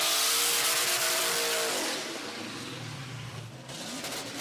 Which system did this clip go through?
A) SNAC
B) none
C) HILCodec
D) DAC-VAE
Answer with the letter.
B